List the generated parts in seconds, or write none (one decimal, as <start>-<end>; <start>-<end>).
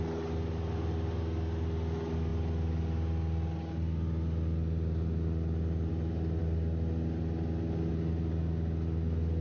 none